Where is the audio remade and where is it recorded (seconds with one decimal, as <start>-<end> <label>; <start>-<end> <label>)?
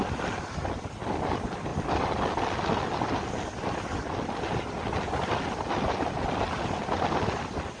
0.0-7.8 recorded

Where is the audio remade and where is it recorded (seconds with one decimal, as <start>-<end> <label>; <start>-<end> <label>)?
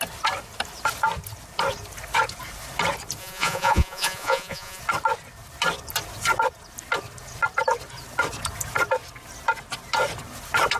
0.0-3.2 recorded; 3.2-4.8 remade; 4.8-10.8 recorded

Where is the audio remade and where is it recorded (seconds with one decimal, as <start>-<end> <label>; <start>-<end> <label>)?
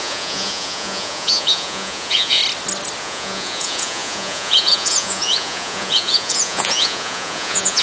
0.0-2.4 remade; 2.4-3.0 recorded; 3.0-7.8 remade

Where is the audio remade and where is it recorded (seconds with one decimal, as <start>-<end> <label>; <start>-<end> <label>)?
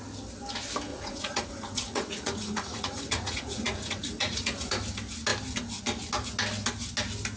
0.0-0.9 recorded; 0.9-4.7 remade; 4.7-7.4 recorded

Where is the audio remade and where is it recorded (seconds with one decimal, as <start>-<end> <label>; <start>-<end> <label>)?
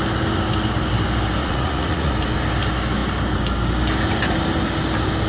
0.0-1.4 recorded; 1.4-2.1 remade; 2.1-5.3 recorded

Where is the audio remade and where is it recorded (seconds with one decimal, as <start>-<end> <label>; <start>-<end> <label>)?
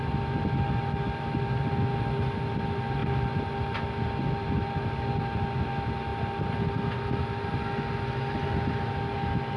0.0-9.6 recorded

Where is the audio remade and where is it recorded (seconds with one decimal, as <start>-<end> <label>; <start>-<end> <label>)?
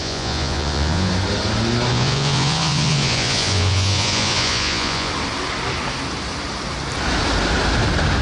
0.0-1.1 remade; 1.1-1.9 recorded; 1.9-5.1 remade; 5.1-8.2 recorded